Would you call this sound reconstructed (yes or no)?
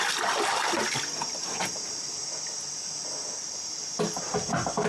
no